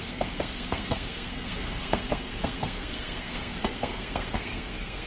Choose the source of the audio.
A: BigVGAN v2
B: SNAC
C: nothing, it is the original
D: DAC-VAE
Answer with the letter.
B